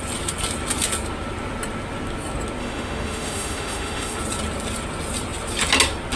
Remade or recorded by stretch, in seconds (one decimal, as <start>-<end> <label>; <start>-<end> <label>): 0.0-2.6 recorded; 2.6-4.2 remade; 4.2-6.2 recorded